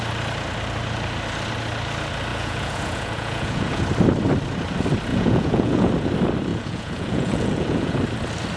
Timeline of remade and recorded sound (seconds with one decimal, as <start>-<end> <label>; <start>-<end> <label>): 0.0-2.3 recorded; 2.3-3.8 remade; 3.8-5.1 recorded; 5.1-5.9 remade; 5.9-6.5 recorded; 6.5-8.0 remade; 8.0-8.6 recorded